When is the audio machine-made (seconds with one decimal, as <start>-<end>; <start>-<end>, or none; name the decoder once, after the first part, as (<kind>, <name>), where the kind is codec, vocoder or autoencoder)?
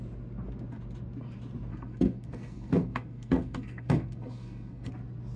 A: 1.7-4.9 (codec, SNAC)